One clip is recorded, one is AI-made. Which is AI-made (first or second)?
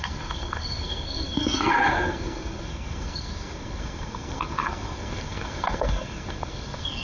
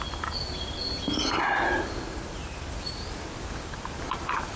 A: first